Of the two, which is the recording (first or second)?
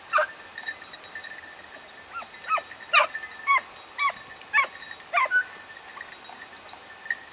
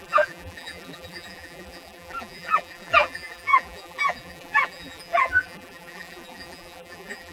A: first